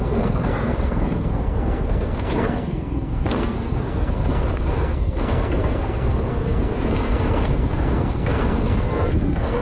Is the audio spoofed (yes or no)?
yes